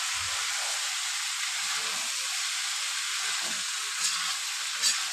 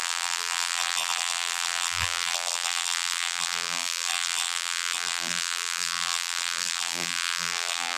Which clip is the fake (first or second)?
second